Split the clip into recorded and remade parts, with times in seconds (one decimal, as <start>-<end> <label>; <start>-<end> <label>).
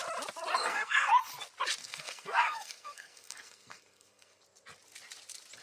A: 0.0-0.5 recorded; 0.5-1.3 remade; 1.3-1.8 recorded; 1.8-4.4 remade; 4.4-5.6 recorded